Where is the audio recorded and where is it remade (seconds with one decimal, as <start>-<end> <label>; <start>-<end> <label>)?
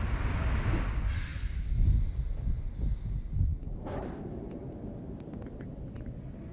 0.0-6.5 recorded